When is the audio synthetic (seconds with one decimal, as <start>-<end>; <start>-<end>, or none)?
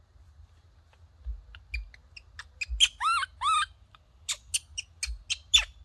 none